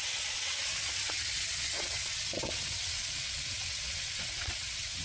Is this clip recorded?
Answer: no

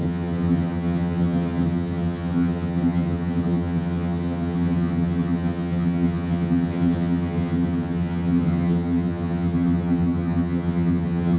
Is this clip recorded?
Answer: no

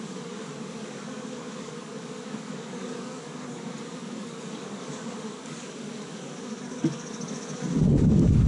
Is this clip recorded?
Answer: no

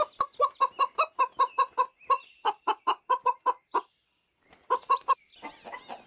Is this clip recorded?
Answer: yes